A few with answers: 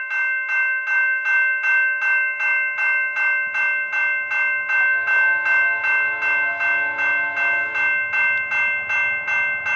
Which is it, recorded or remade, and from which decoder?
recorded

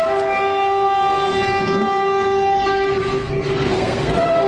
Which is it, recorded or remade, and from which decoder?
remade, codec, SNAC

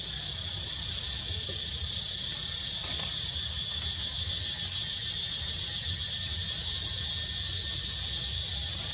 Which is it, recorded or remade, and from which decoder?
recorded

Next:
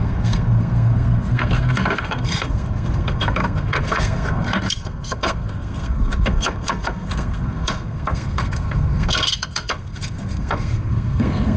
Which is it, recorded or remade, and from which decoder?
remade, codec, SNAC